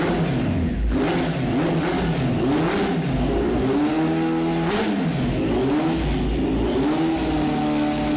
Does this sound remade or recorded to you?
recorded